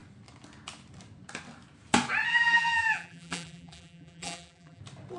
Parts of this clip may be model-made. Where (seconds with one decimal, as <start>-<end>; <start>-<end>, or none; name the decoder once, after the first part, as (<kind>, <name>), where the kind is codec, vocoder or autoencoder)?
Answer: 2.3-4.8 (vocoder, BigVGAN v2)